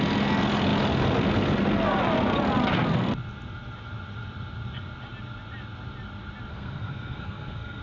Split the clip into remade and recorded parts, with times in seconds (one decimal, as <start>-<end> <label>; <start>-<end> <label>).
0.0-6.5 recorded; 6.5-7.8 remade